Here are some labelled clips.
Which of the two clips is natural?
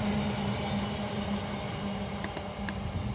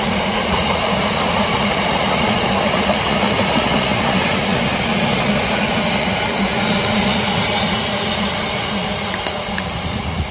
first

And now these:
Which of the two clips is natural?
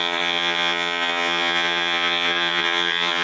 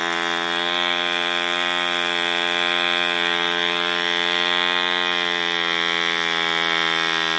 second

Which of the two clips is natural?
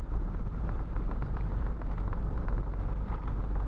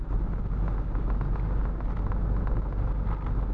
second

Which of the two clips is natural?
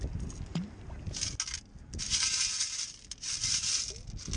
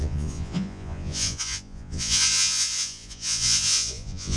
first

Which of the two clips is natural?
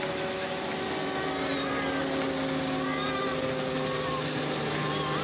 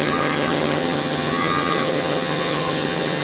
first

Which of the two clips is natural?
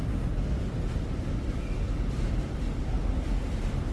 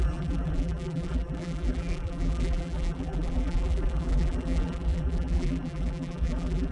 first